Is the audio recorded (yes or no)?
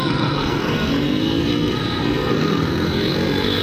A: no